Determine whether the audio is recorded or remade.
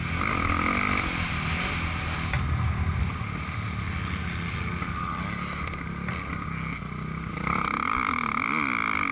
recorded